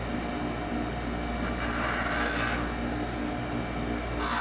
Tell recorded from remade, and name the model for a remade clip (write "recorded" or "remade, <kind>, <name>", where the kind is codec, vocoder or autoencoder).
recorded